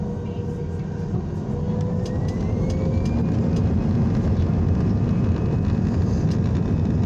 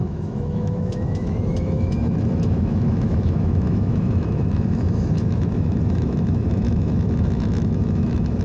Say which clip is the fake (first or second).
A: second